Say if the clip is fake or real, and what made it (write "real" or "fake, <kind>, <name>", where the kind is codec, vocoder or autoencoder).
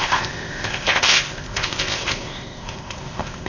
fake, codec, ZipCodec